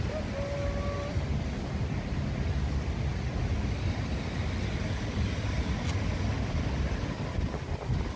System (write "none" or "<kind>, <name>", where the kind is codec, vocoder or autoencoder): none